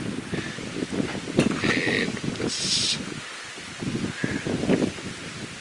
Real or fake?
real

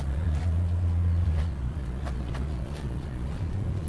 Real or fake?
fake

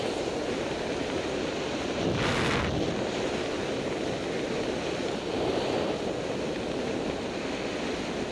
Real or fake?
real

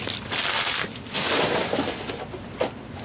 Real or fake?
real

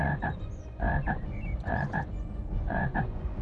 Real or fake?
fake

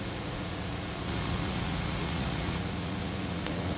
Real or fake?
fake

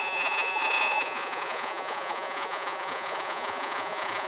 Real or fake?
fake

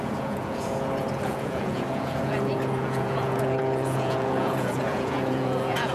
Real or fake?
fake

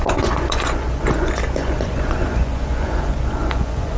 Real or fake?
fake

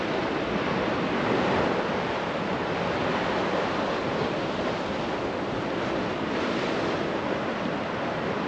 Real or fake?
real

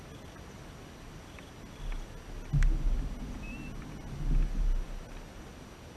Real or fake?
real